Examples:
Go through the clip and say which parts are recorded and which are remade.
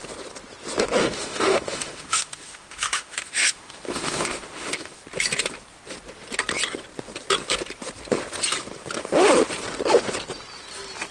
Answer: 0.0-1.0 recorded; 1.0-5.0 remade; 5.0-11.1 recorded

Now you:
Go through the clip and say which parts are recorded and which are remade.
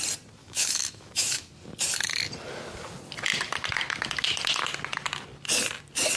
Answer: 0.0-0.4 recorded; 0.4-1.5 remade; 1.5-6.2 recorded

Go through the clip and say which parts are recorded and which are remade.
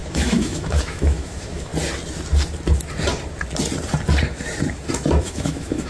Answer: 0.0-1.7 remade; 1.7-5.2 recorded; 5.2-5.9 remade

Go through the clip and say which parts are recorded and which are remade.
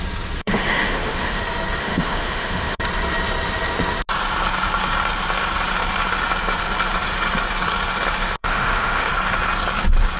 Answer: 0.0-0.4 recorded; 0.4-1.4 remade; 1.4-1.8 recorded; 1.8-2.8 remade; 2.8-8.4 recorded; 8.4-9.1 remade; 9.1-10.2 recorded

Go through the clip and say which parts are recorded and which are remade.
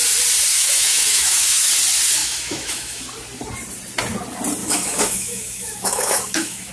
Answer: 0.0-0.5 recorded; 0.5-1.7 remade; 1.7-2.2 recorded; 2.2-3.0 remade; 3.0-4.6 recorded; 4.6-6.7 remade